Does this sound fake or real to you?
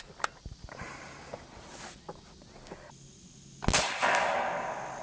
real